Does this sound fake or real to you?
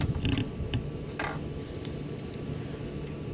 real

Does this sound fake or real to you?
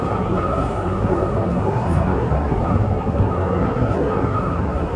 fake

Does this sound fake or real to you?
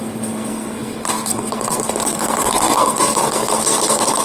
fake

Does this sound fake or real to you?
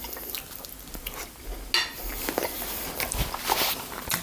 real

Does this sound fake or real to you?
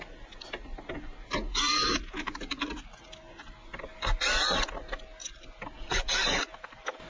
real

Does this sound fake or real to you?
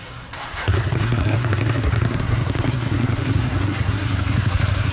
fake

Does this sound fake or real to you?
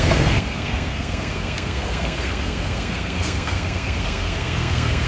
fake